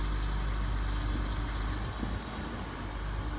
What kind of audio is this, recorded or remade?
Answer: recorded